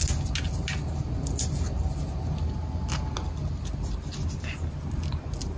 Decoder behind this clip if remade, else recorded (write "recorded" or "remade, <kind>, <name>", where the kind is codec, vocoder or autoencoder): recorded